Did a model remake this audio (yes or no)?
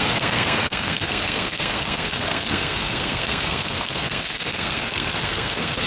yes